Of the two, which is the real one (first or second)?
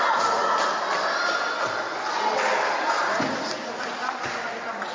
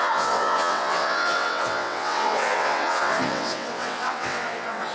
first